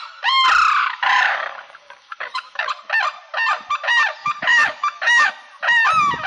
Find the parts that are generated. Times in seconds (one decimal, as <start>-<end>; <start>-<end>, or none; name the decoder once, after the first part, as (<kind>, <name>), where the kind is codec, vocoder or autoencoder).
0.8-2.7 (codec, DAC); 4.2-5.3